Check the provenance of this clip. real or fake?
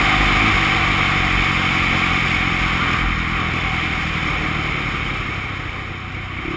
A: real